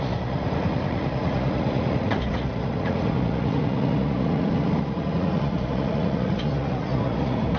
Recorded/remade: remade